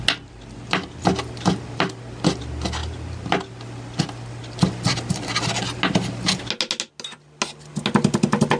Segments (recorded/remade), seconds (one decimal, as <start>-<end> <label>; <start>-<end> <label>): 0.0-8.6 recorded